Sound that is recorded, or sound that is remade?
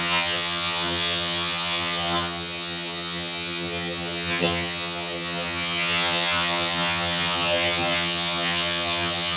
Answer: remade